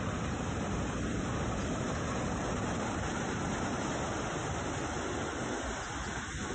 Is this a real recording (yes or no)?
yes